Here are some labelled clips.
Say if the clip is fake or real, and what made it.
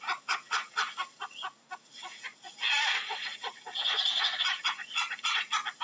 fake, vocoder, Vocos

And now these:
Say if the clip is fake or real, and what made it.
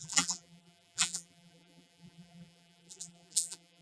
fake, vocoder, BigVGAN v2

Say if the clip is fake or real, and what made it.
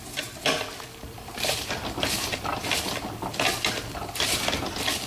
real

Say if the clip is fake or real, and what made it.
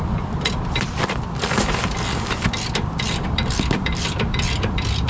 fake, vocoder, BigVGAN v2